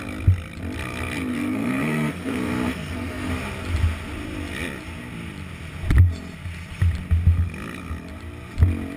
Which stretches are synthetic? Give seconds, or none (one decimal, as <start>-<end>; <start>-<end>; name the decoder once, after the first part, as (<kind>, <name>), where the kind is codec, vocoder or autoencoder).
1.3-3.3 (codec, SNAC)

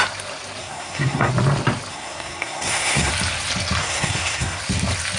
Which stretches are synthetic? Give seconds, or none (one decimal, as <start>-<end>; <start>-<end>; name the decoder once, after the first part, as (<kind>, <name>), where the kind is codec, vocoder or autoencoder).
0.6-1.3 (codec, SNAC); 1.9-3.1; 3.8-4.6